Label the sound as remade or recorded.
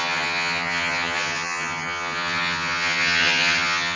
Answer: remade